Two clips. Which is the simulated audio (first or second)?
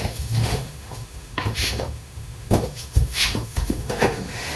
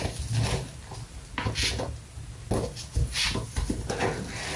first